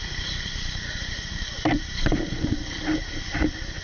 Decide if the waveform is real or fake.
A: fake